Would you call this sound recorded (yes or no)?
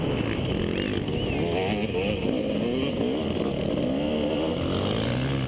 yes